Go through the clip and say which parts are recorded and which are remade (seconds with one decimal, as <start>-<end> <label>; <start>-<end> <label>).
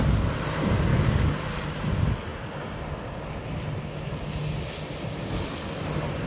0.0-0.9 recorded; 0.9-1.6 remade; 1.6-6.3 recorded